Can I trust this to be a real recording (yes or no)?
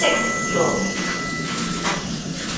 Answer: yes